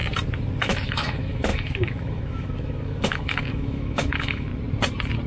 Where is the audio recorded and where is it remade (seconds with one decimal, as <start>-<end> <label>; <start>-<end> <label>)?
0.0-0.6 recorded; 0.6-4.5 remade; 4.5-5.3 recorded